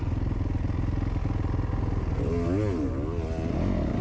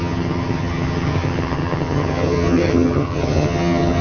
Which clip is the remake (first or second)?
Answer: second